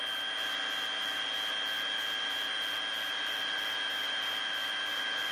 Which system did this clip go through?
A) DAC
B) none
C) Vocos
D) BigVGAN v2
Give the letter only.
B